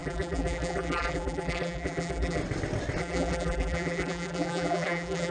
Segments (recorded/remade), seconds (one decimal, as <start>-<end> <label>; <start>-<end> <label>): 0.0-2.4 remade; 2.4-3.0 recorded; 3.0-5.3 remade